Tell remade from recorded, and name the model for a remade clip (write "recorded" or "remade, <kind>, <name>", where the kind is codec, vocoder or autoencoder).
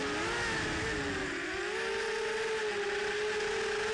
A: recorded